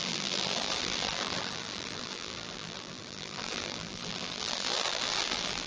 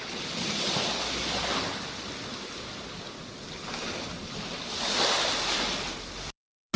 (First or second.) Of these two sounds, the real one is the second